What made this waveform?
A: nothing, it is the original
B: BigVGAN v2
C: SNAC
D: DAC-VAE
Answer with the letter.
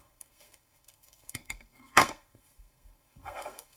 C